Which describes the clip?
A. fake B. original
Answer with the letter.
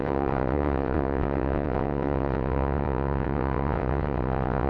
A